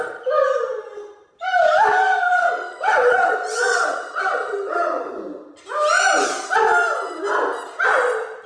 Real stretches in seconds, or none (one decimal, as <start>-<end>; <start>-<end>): 0.0-2.4; 5.1-8.5